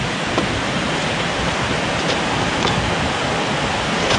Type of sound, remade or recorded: recorded